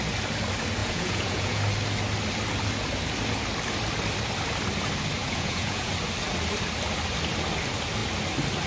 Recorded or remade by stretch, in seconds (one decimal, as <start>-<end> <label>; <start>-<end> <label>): 0.0-0.8 recorded; 0.8-1.6 remade; 1.6-5.2 recorded; 5.2-5.9 remade; 5.9-8.7 recorded

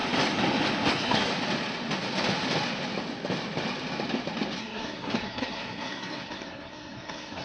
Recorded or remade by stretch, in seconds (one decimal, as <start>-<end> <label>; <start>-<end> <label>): 0.0-0.9 recorded; 0.9-1.3 remade; 1.3-4.6 recorded; 4.6-7.4 remade

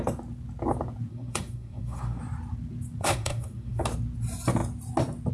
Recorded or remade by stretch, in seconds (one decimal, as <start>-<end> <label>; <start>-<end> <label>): 0.0-1.1 recorded; 1.1-2.2 remade; 2.2-3.0 recorded; 3.0-3.8 remade; 3.8-5.3 recorded

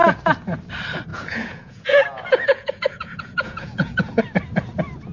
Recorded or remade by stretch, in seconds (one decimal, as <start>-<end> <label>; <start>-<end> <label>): 0.0-1.1 recorded; 1.1-4.2 remade; 4.2-5.1 recorded

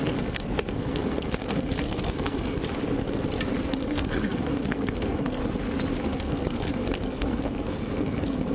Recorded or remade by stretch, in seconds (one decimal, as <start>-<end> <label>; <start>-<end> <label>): 0.0-2.6 remade; 2.6-3.7 recorded; 3.7-5.4 remade; 5.4-6.0 recorded; 6.0-8.5 remade

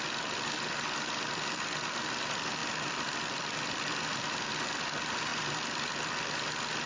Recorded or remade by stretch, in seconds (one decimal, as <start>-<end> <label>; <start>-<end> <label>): 0.0-2.6 recorded; 2.6-4.5 remade; 4.5-6.9 recorded

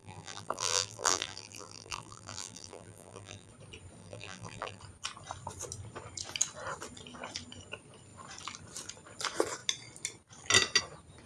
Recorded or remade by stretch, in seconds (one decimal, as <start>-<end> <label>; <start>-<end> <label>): 0.0-3.5 remade; 3.5-4.0 recorded; 4.0-4.8 remade; 4.8-11.3 recorded